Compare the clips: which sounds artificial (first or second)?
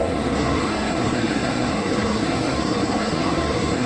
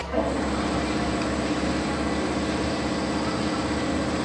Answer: first